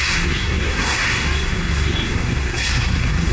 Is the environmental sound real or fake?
fake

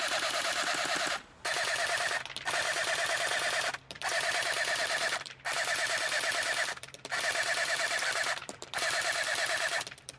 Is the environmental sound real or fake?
fake